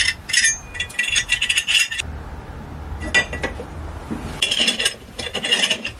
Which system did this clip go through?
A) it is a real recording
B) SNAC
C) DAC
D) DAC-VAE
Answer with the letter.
A